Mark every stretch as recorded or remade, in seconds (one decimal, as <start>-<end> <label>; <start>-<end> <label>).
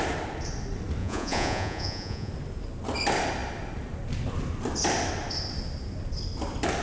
0.0-1.0 recorded; 1.0-2.3 remade; 2.3-6.8 recorded